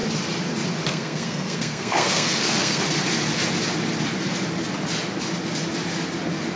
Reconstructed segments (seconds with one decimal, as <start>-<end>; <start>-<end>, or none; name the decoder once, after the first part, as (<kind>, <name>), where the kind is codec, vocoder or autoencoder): 0.9-2.8 (codec, SNAC)